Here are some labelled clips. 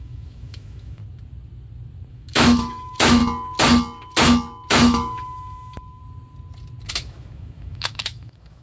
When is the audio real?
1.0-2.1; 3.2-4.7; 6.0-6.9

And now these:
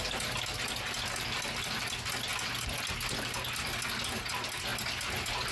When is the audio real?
0.0-5.5

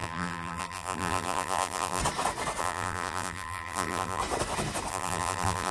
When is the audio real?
2.0-2.6; 4.2-4.9

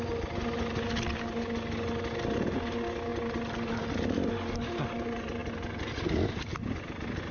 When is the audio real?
0.0-7.3